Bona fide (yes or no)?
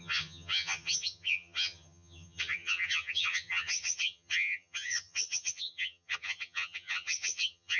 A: no